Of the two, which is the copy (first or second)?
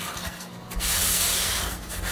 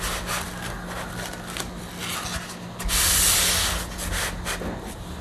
first